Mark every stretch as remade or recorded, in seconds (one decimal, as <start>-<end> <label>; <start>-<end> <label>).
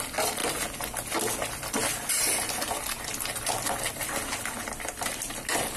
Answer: 0.0-5.8 recorded